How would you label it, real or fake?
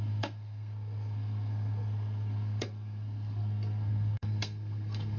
fake